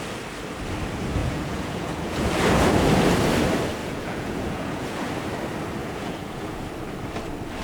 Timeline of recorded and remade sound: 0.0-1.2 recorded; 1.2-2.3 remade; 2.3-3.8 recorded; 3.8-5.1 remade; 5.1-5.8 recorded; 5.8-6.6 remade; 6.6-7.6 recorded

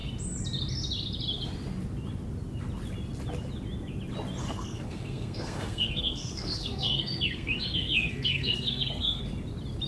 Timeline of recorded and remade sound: 0.0-4.4 recorded; 4.4-9.2 remade; 9.2-9.9 recorded

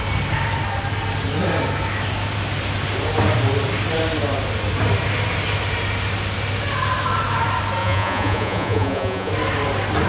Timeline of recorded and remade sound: 0.0-7.8 recorded; 7.8-9.3 remade; 9.3-10.1 recorded

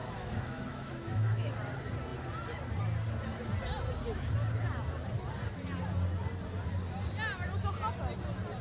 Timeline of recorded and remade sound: 0.0-1.5 remade; 1.5-8.6 recorded

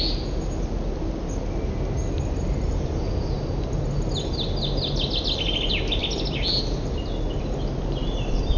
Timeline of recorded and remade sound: 0.0-8.6 recorded

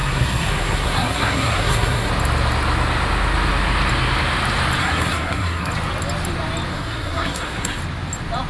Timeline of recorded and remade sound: 0.0-2.1 remade; 2.1-4.8 recorded; 4.8-5.7 remade; 5.7-6.7 recorded; 6.7-7.8 remade; 7.8-8.5 recorded